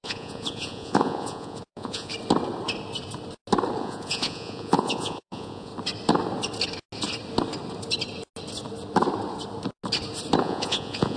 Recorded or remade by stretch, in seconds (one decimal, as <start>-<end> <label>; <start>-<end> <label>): 0.0-2.1 remade; 2.1-3.8 recorded; 3.8-5.7 remade; 5.7-10.4 recorded; 10.4-11.2 remade